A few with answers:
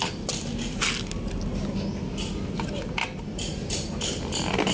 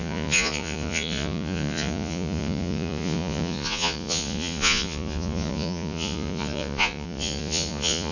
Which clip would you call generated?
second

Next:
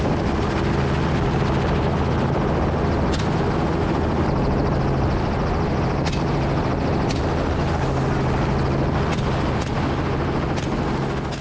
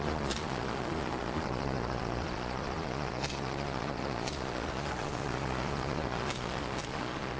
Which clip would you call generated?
second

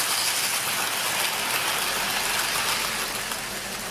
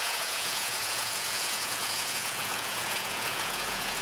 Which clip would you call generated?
second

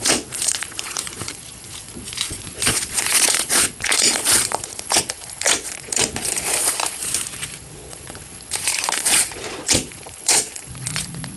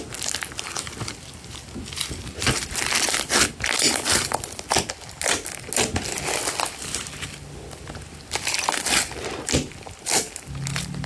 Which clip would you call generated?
first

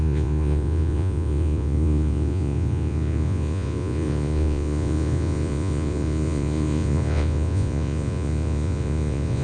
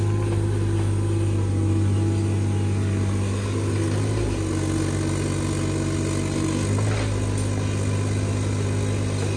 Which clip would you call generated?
first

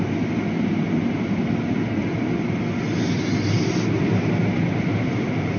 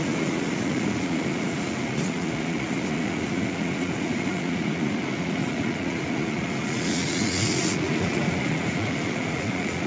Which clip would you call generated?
second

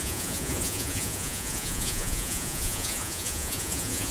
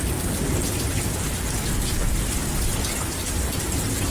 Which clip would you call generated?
first